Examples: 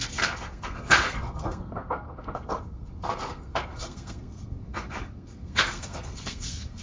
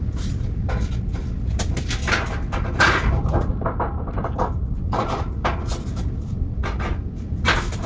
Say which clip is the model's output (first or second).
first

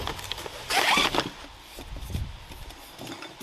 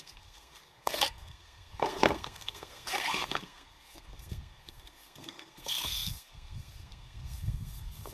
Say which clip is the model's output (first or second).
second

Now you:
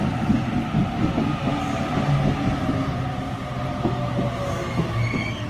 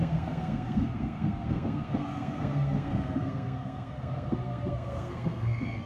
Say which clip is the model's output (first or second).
second